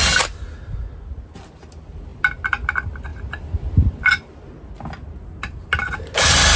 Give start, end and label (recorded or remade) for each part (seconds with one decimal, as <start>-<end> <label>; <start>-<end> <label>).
0.0-6.6 recorded